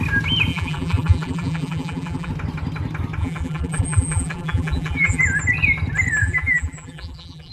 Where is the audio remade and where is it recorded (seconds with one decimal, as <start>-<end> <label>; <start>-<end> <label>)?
0.0-0.5 recorded; 0.5-2.3 remade; 2.3-3.2 recorded; 3.2-5.2 remade; 5.2-6.2 recorded; 6.2-7.5 remade